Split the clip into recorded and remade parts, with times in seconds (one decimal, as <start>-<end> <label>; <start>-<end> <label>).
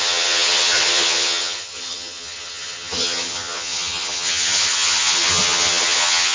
0.0-6.3 remade